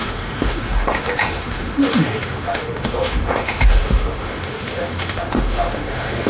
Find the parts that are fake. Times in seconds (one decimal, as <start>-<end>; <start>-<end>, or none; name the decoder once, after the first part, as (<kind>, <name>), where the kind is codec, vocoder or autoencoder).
0.0-6.3 (autoencoder, DAC-VAE)